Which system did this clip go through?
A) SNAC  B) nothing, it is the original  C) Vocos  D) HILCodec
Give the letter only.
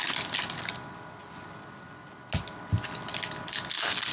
B